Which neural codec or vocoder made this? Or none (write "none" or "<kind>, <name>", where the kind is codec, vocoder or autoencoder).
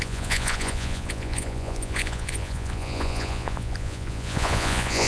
vocoder, Vocos